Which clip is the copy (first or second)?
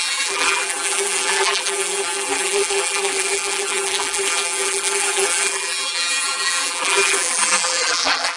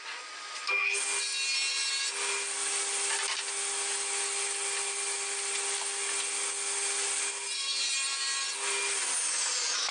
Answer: first